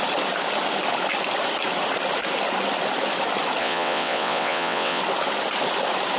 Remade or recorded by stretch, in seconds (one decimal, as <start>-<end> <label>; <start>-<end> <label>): 0.0-3.6 recorded; 3.6-5.0 remade; 5.0-6.2 recorded